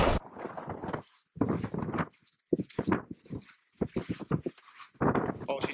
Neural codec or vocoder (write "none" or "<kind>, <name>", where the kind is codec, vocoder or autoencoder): none